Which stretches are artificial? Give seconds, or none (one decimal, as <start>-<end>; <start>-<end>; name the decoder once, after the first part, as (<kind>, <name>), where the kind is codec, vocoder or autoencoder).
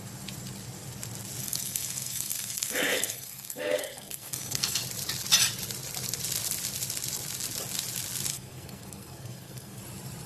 1.4-4.8 (codec, SNAC); 8.3-9.8